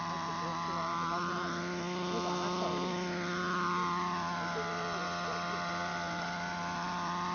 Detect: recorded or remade recorded